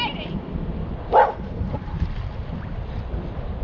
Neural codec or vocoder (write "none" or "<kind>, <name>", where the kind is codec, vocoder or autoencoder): vocoder, BigVGAN v2